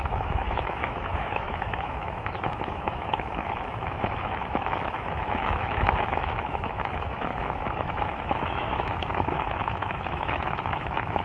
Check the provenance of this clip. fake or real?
fake